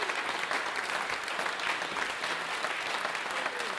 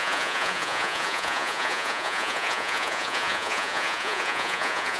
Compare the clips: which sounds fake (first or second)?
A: second